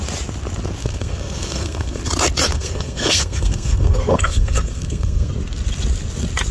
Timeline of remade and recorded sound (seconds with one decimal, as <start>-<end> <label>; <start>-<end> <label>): 0.0-0.8 recorded; 0.8-2.0 remade; 2.0-2.5 recorded; 2.5-5.3 remade; 5.3-6.5 recorded